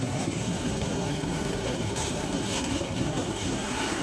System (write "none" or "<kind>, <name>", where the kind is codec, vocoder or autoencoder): codec, SNAC